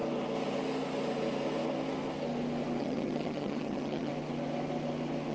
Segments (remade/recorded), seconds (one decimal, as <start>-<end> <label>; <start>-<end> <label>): 0.0-2.8 recorded; 2.8-4.1 remade; 4.1-5.3 recorded